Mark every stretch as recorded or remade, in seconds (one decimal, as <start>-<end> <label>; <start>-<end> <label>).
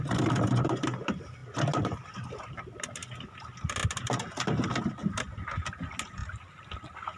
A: 0.0-7.2 recorded